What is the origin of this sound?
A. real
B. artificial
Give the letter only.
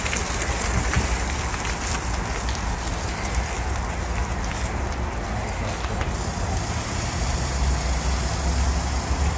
A